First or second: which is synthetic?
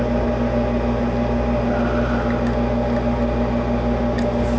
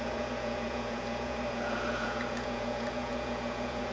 second